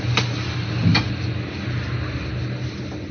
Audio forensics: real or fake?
real